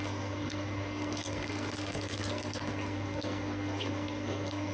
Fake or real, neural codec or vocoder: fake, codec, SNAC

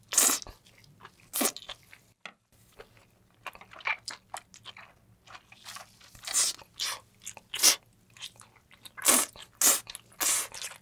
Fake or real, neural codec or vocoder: real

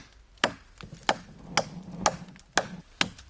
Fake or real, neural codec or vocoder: real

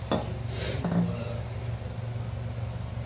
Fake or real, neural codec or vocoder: real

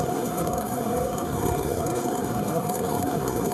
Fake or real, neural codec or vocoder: fake, codec, SNAC